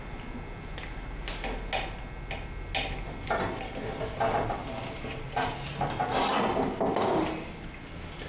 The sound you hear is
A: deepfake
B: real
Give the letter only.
B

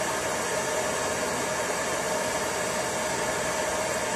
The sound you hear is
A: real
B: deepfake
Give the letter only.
A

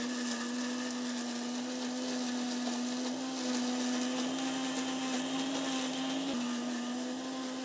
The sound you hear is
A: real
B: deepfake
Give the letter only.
A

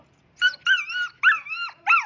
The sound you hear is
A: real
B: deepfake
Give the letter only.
B